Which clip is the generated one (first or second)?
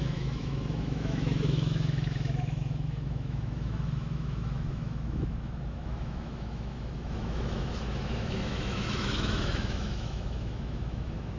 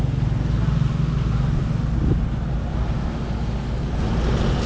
first